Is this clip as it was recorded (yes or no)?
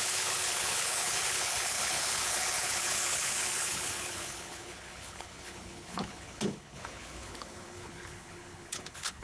no